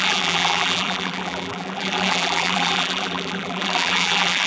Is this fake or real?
fake